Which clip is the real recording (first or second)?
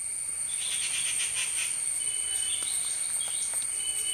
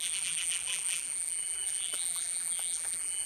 first